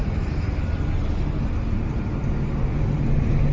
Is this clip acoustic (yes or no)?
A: yes